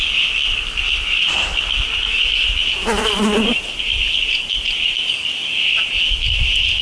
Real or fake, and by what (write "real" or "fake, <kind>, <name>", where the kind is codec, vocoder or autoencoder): real